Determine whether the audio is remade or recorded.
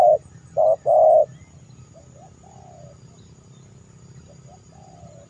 recorded